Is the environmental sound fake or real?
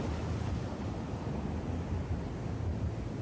real